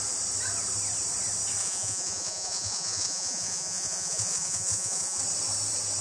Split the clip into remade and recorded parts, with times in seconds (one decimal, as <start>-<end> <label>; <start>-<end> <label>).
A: 0.0-1.6 recorded; 1.6-5.2 remade; 5.2-6.0 recorded